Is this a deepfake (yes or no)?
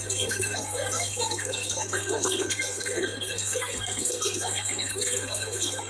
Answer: yes